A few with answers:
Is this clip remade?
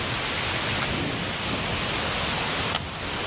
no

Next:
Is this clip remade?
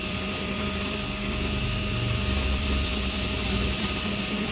yes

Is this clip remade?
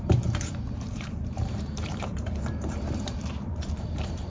yes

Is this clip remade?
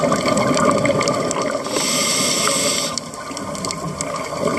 no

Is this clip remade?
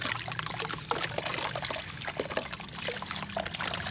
no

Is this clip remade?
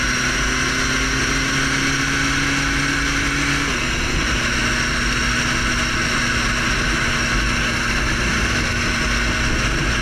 no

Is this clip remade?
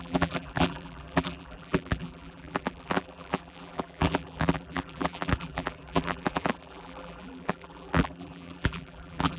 yes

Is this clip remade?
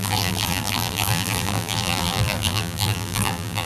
yes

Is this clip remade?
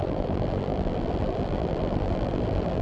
yes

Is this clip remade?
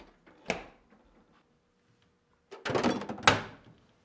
no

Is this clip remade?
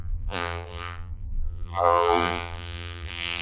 yes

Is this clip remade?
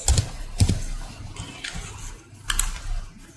no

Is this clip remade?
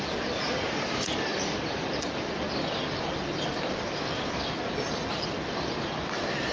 yes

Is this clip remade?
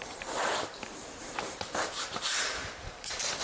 yes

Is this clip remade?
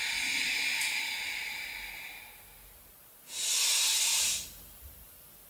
no